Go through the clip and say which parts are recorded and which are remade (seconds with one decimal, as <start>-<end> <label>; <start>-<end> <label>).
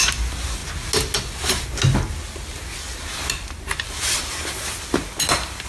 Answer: 0.0-5.7 recorded